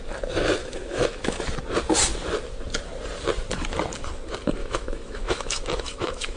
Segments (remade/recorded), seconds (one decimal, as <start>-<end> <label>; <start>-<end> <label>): 0.0-0.6 recorded; 0.6-1.4 remade; 1.4-4.6 recorded; 4.6-6.4 remade